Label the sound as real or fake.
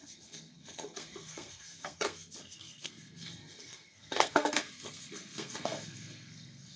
fake